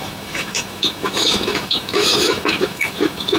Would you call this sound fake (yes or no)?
yes